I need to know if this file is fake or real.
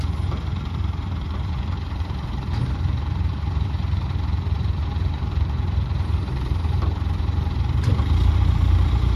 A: fake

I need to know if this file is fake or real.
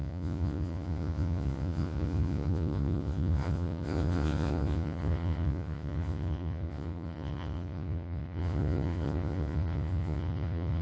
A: fake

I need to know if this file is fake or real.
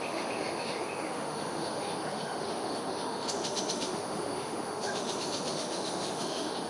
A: fake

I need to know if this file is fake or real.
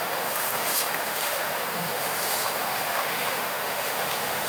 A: fake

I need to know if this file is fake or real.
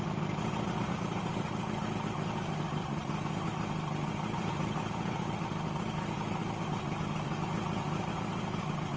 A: real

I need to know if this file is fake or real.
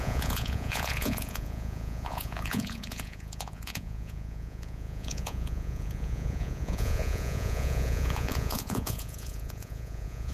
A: fake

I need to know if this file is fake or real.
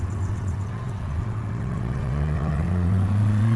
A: fake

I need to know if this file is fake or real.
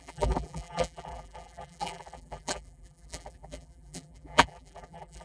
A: fake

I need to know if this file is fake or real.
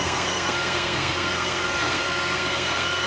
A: fake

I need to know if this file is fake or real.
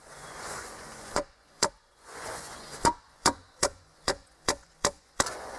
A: fake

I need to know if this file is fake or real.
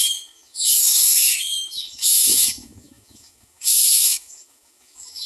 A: fake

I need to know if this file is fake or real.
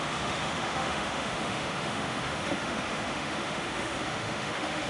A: fake